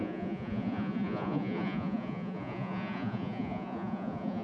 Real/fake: fake